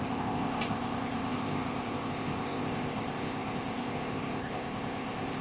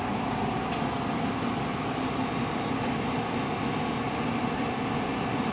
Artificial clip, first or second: first